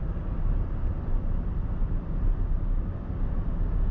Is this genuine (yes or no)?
yes